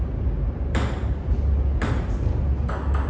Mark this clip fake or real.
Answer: real